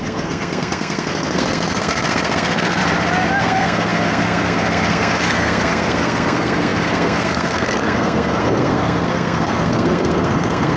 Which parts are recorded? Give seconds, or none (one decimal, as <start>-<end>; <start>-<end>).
2.8-3.4